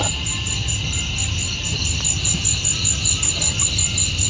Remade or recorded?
recorded